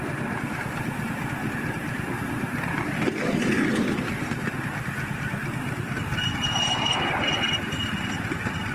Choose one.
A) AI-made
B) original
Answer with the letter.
B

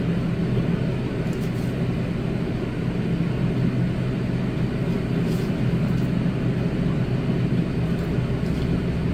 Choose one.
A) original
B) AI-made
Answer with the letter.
A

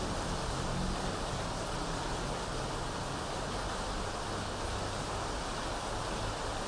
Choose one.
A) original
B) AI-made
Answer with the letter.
A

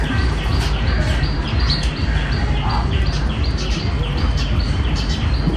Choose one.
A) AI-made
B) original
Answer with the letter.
A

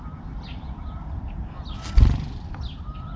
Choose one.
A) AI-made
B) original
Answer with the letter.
A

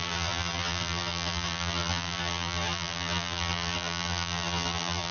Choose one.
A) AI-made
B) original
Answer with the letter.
A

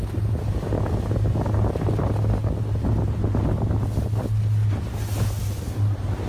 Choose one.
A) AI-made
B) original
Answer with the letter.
B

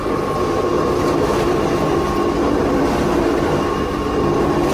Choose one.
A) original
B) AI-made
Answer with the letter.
A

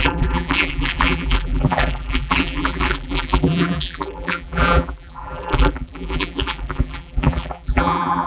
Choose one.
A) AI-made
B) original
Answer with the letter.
A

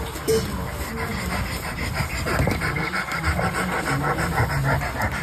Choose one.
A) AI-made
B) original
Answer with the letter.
B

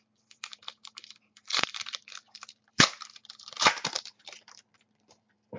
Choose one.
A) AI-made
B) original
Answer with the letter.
A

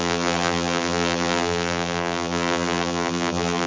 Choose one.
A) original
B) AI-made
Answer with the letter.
B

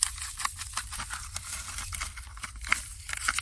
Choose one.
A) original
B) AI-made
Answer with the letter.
B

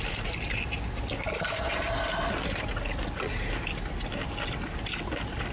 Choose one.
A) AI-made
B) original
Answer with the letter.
B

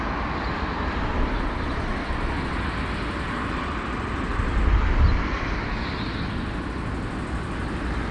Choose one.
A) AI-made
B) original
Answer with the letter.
B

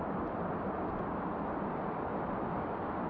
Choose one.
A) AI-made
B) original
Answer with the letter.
B